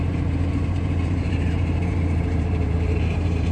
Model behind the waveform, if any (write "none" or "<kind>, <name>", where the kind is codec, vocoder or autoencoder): vocoder, BigVGAN v2